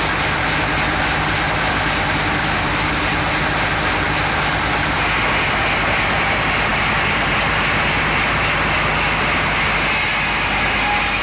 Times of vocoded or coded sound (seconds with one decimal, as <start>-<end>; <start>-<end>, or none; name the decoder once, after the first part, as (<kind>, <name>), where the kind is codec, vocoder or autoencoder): none